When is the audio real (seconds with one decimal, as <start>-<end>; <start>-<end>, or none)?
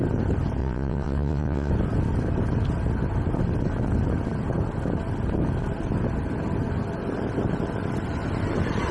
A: 0.0-0.6; 1.7-8.9